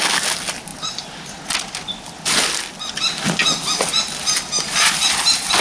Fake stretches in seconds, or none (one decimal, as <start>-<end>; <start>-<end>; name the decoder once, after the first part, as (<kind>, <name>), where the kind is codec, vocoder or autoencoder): none